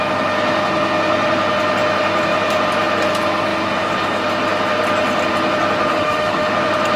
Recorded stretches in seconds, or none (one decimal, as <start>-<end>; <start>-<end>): 0.0-5.9; 6.5-7.0